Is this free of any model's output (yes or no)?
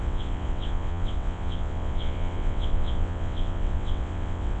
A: no